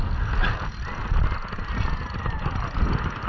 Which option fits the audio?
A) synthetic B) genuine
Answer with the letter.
B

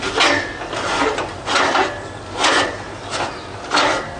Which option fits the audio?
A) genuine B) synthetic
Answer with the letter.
A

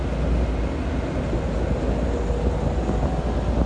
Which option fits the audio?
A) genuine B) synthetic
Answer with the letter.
A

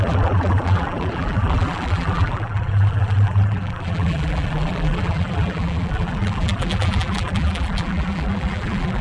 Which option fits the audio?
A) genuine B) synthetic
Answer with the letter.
B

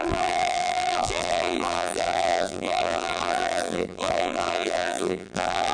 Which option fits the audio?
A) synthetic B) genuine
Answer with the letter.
A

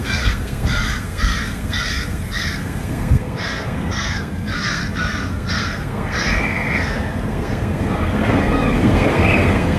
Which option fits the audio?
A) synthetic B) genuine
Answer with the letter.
A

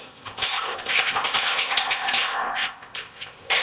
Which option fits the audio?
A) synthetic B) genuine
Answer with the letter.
A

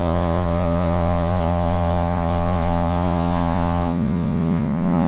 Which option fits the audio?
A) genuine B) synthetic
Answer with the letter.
B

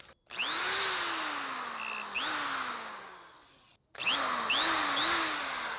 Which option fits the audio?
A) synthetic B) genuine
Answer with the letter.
B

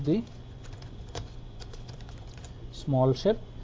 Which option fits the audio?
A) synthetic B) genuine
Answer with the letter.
A